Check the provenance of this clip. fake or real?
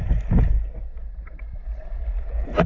real